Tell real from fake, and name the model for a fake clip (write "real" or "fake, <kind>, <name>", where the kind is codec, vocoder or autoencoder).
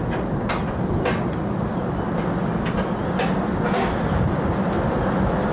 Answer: real